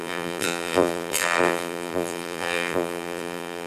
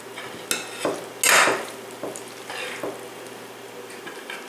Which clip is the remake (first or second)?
first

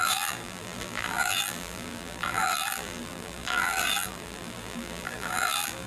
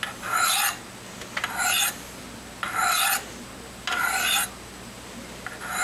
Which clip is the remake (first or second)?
first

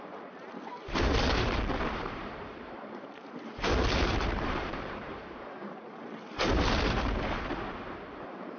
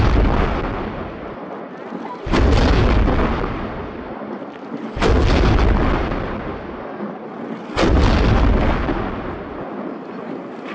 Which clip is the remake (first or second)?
first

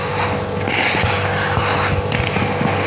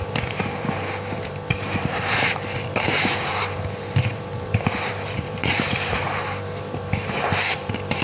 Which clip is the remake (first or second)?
second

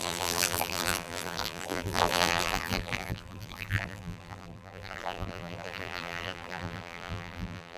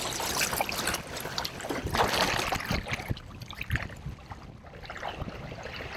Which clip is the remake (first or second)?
first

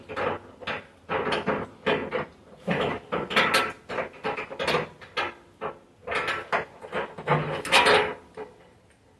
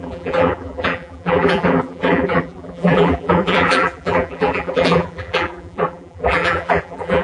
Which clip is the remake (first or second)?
second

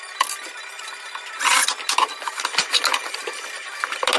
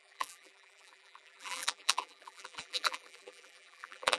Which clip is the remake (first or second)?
second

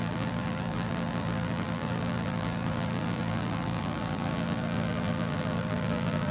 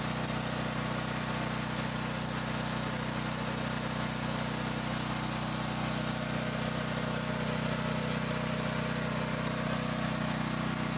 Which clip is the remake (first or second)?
first